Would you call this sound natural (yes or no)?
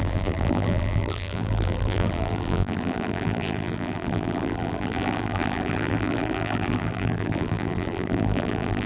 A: no